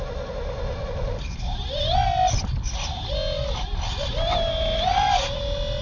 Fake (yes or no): no